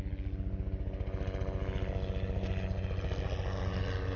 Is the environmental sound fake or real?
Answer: real